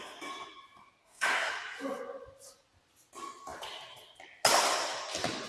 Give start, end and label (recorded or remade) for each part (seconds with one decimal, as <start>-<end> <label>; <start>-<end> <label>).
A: 0.0-1.0 recorded; 1.0-1.5 remade; 1.5-5.5 recorded